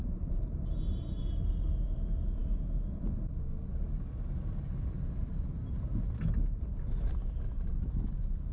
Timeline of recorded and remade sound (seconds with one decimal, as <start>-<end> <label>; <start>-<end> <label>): 0.0-1.5 remade; 1.5-8.5 recorded